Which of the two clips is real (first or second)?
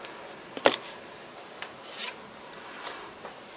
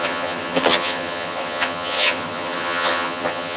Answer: first